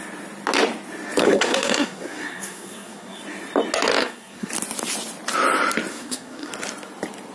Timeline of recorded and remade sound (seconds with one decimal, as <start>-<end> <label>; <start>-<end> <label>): 0.0-1.2 recorded; 1.2-3.2 remade; 3.2-4.0 recorded; 4.0-4.5 remade; 4.5-5.9 recorded; 5.9-6.5 remade; 6.5-7.3 recorded

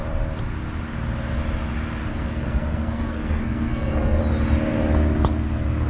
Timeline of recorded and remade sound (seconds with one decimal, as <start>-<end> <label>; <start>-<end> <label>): 0.0-2.1 recorded; 2.1-4.2 remade; 4.2-5.9 recorded

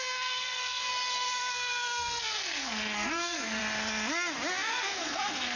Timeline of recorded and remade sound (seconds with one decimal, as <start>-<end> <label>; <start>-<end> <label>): 0.0-0.9 remade; 0.9-1.5 recorded; 1.5-3.6 remade; 3.6-4.5 recorded; 4.5-5.6 remade

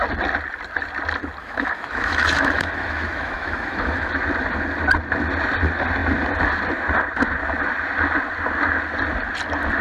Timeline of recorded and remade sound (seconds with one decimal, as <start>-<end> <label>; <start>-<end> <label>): 0.0-1.4 recorded; 1.4-4.1 remade; 4.1-9.8 recorded

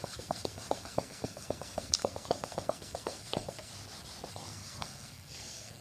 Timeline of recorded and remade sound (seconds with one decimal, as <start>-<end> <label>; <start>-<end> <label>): 0.0-3.7 remade; 3.7-4.3 recorded; 4.3-5.8 remade

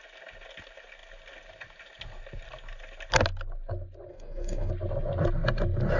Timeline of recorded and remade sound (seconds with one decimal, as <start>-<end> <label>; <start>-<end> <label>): 0.0-4.1 recorded; 4.1-4.7 remade; 4.7-6.0 recorded

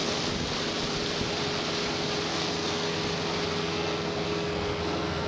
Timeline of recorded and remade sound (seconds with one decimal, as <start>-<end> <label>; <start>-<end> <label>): 0.0-2.3 recorded; 2.3-3.0 remade; 3.0-3.6 recorded; 3.6-5.3 remade